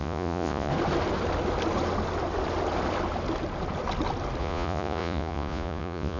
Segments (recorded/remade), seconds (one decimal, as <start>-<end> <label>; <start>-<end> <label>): 0.0-0.7 remade; 0.7-4.4 recorded; 4.4-6.2 remade